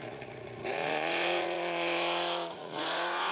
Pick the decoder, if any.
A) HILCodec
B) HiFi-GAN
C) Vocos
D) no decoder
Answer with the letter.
C